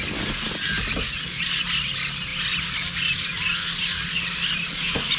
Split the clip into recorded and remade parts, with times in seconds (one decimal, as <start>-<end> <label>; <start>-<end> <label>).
0.0-5.2 recorded

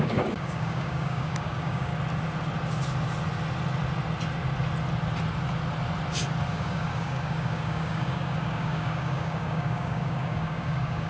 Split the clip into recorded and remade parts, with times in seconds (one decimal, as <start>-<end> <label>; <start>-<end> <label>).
0.0-1.9 remade; 1.9-6.5 recorded; 6.5-11.1 remade

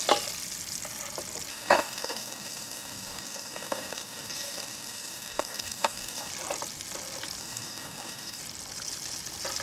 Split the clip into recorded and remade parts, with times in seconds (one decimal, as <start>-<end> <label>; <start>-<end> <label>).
0.0-1.5 recorded; 1.5-6.3 remade; 6.3-7.4 recorded; 7.4-8.4 remade; 8.4-9.6 recorded

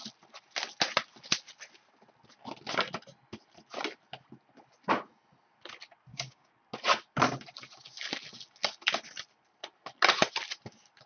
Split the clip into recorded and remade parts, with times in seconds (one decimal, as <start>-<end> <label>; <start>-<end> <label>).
0.0-6.1 recorded; 6.1-6.6 remade; 6.6-11.1 recorded

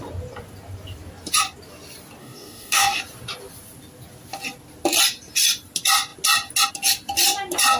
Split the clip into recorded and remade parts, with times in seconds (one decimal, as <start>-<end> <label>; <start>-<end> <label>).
0.0-2.2 recorded; 2.2-3.0 remade; 3.0-7.8 recorded